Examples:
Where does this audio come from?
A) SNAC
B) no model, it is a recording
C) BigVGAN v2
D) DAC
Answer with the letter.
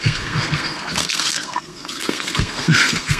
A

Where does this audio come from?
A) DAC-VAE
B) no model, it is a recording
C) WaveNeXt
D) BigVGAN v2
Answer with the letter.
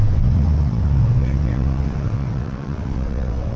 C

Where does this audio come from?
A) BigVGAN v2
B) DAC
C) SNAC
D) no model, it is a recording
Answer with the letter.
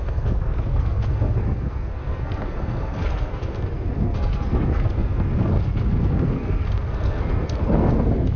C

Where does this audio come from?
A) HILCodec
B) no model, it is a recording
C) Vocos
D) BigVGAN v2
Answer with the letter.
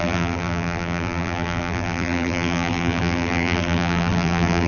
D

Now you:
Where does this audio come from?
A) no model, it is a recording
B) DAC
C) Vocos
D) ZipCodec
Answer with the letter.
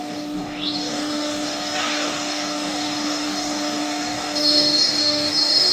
B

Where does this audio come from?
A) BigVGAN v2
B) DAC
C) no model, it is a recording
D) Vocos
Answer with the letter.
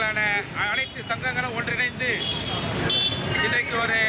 C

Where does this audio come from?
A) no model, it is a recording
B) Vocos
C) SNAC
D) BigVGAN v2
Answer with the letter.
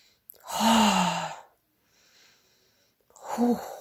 A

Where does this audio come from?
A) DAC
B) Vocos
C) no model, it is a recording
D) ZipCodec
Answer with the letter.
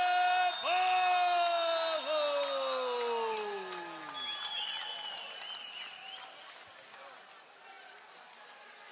C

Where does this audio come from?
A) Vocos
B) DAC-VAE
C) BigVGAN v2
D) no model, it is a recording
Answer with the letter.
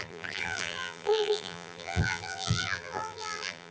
C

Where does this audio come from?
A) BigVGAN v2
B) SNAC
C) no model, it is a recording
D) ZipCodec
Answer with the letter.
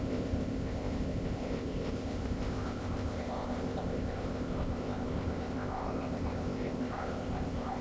D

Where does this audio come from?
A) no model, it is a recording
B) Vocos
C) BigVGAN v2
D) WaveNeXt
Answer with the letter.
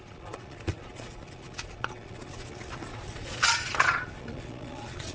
B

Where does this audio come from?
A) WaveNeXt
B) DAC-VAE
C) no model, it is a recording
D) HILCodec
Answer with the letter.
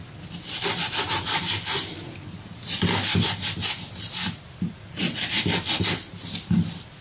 C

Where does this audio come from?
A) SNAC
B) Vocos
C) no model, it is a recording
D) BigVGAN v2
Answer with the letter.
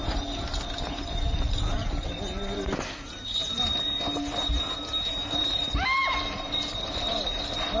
C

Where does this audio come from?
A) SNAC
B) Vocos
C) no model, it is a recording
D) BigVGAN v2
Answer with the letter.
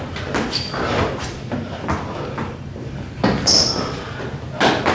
C